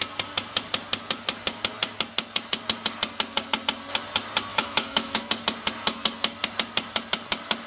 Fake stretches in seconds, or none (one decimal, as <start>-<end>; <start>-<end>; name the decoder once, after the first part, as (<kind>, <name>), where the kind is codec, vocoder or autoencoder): 4.5-5.2 (autoencoder, DAC-VAE)